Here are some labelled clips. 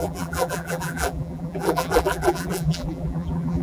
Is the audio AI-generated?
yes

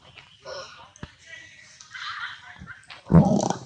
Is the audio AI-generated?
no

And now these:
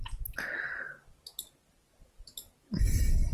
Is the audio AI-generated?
no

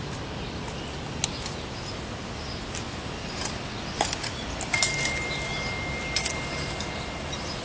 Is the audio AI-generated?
no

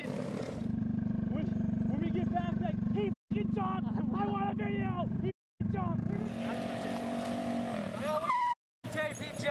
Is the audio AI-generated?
no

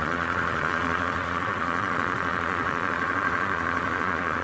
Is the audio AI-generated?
yes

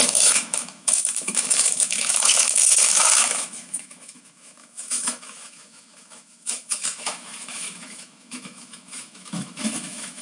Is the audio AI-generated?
yes